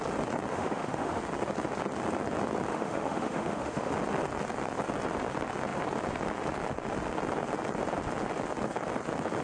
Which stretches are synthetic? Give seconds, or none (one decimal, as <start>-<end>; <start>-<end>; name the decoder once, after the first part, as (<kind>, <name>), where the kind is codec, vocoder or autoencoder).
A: 0.5-1.2 (autoencoder, DAC-VAE); 2.7-3.9